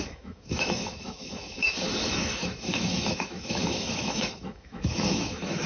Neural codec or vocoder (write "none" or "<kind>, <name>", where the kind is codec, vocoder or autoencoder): autoencoder, DAC-VAE